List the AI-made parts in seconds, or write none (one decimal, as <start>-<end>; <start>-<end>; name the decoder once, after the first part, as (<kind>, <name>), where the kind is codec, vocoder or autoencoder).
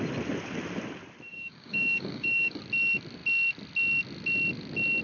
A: 1.3-2.6 (codec, DAC)